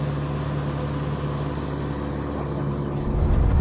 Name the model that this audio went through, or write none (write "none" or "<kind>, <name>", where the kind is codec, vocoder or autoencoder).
none